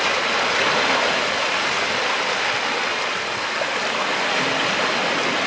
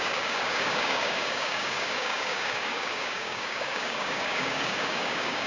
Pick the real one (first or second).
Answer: first